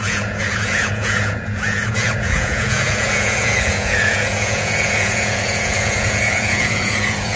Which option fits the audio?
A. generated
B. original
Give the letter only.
A